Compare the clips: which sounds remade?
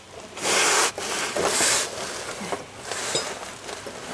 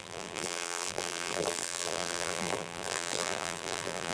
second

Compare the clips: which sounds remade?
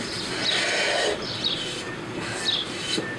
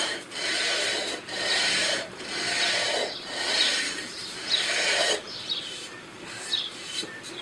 second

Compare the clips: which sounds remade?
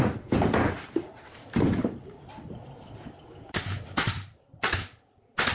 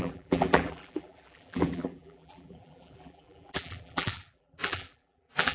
second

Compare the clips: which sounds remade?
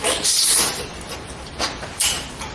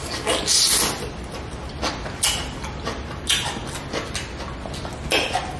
first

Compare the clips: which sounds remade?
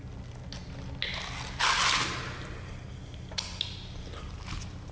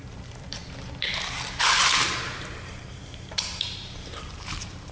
second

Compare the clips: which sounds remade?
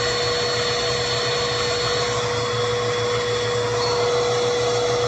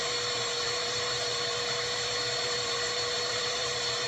second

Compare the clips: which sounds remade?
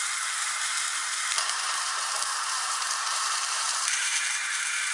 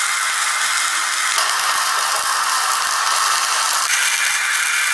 first